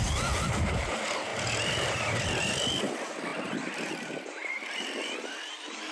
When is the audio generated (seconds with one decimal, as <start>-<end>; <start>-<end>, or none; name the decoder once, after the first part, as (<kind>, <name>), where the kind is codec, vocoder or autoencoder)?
0.0-3.3 (vocoder, BigVGAN v2); 3.9-5.9